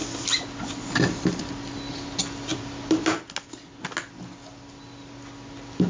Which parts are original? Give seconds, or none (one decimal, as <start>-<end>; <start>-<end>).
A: 0.0-5.9